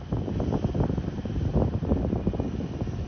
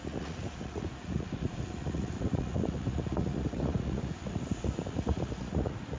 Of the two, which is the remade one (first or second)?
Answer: second